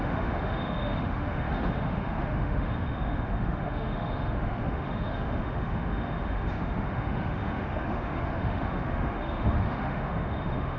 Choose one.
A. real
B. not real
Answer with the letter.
B